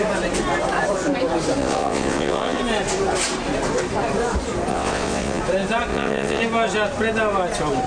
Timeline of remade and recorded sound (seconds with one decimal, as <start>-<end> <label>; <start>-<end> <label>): 0.0-1.6 recorded; 1.6-2.6 remade; 2.6-4.7 recorded; 4.7-5.4 remade; 5.4-5.9 recorded; 5.9-6.4 remade; 6.4-7.9 recorded